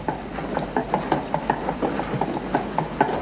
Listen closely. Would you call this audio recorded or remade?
recorded